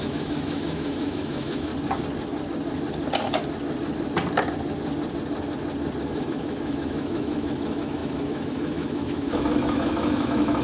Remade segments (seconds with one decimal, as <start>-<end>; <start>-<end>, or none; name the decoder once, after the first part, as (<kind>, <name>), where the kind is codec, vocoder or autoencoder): 0.0-1.7 (autoencoder, DAC-VAE); 6.0-10.6